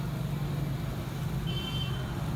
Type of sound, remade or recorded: recorded